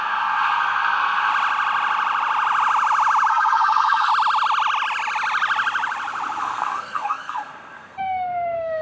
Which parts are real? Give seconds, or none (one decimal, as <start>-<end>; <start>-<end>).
1.3-3.3; 4.1-6.4